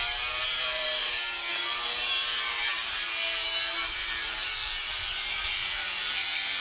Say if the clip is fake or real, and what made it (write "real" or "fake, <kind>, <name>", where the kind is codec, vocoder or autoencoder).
fake, vocoder, BigVGAN v2